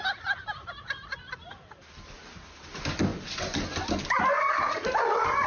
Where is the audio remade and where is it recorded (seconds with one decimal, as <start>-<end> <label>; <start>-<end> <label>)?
0.0-3.1 remade; 3.1-4.2 recorded; 4.2-5.5 remade